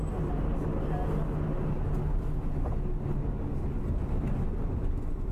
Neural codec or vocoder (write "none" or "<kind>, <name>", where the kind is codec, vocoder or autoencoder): none